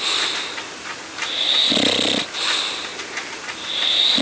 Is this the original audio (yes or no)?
yes